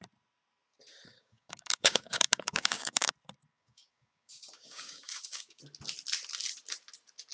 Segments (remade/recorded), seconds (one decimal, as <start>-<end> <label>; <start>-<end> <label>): 0.0-1.1 recorded; 1.1-3.1 remade; 3.1-3.5 recorded; 3.5-5.6 remade; 5.6-7.3 recorded